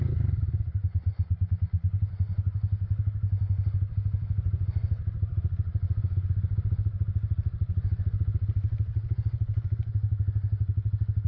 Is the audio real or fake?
real